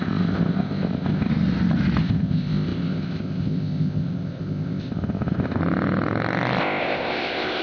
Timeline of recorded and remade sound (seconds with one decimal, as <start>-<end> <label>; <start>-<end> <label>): 0.0-1.3 remade; 1.3-2.0 recorded; 2.0-5.6 remade; 5.6-6.6 recorded; 6.6-7.6 remade